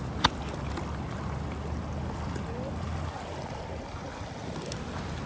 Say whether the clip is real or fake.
real